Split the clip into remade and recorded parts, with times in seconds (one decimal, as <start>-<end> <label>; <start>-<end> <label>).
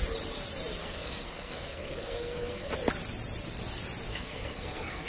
0.0-0.8 recorded; 0.8-2.7 remade; 2.7-4.1 recorded; 4.1-5.1 remade